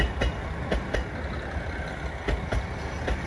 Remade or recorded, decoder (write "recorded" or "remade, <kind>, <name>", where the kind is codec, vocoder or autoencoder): recorded